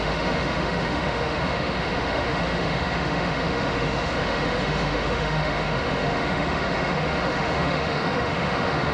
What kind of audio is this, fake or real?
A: fake